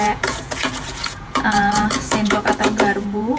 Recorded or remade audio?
remade